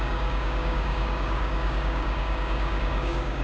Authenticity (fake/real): fake